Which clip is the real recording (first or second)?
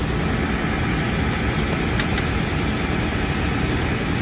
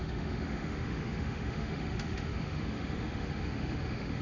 first